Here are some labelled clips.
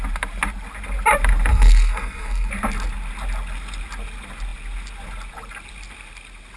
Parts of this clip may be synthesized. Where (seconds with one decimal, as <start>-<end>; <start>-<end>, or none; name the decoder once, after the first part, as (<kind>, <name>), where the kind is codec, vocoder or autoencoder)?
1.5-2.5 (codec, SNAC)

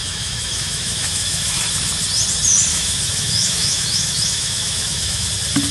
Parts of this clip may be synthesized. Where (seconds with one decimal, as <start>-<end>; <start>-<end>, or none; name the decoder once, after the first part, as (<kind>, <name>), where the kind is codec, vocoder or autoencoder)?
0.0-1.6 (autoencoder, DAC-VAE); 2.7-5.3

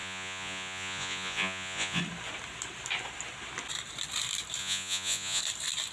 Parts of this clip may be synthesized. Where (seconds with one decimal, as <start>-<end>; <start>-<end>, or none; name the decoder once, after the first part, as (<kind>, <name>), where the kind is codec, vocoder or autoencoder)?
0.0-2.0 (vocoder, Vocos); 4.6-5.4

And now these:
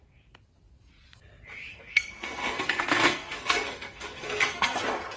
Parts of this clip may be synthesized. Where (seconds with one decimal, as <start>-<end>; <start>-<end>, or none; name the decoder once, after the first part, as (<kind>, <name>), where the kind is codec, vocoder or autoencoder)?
1.7-4.8 (codec, SNAC)

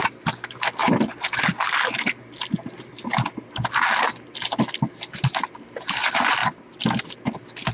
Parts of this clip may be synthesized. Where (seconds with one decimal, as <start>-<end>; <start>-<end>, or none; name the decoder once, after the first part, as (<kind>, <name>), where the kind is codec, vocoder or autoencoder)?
none